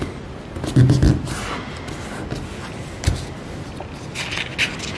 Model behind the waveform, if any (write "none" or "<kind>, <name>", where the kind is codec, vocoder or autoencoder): none